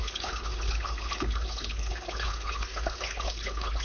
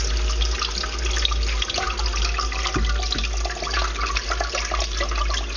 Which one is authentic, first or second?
second